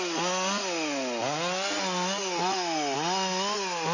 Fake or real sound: real